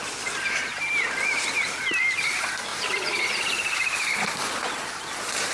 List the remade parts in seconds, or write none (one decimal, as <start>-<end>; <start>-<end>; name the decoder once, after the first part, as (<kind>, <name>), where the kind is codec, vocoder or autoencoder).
0.7-1.8 (vocoder, BigVGAN v2); 2.7-5.5